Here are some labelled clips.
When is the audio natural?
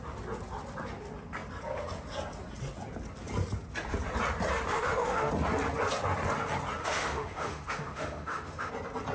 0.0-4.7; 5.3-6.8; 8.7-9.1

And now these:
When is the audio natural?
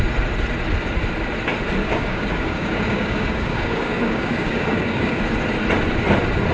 0.0-1.8; 5.2-6.5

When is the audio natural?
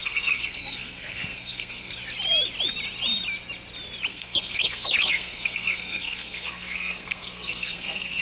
1.9-4.1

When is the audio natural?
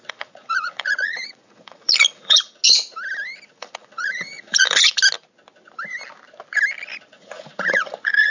2.6-3.5; 5.0-7.1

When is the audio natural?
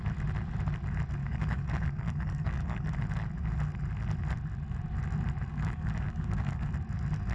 0.0-1.2; 2.9-5.5; 6.7-7.3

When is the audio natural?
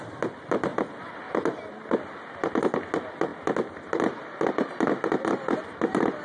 0.0-6.2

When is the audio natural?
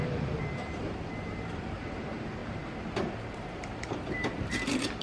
none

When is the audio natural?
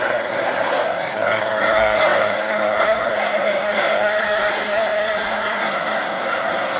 none